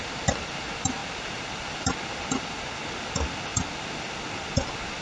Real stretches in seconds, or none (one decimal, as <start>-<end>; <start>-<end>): 0.0-5.0